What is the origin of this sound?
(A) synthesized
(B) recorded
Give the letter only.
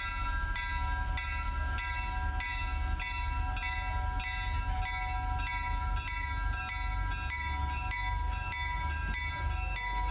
B